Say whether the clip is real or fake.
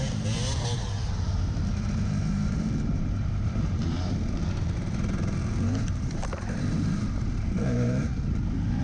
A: fake